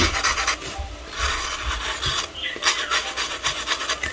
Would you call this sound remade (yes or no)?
no